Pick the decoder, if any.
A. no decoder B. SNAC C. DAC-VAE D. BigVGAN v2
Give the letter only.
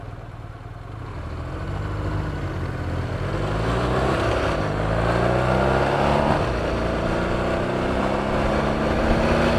A